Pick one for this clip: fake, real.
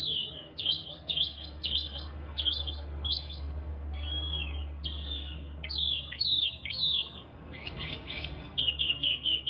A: fake